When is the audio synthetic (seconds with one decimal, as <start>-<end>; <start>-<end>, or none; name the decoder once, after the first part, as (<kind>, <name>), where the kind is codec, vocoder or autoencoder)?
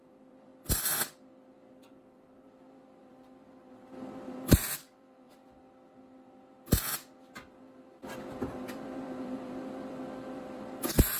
0.0-0.5 (vocoder, BigVGAN v2); 1.7-5.4; 7.6-11.2